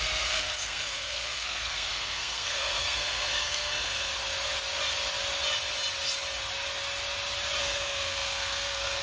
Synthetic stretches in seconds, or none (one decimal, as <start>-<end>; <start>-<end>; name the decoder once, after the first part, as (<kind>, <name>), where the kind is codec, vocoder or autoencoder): 0.0-4.1 (codec, SNAC); 7.6-9.0